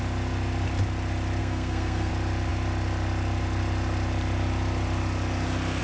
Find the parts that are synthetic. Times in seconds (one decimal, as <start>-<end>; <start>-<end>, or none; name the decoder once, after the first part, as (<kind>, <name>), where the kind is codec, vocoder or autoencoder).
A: 1.4-2.1 (codec, SNAC)